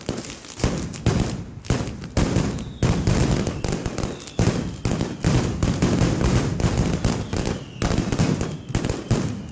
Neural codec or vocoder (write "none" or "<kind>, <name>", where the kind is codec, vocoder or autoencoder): none